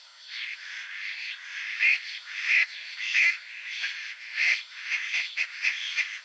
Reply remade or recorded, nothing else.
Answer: remade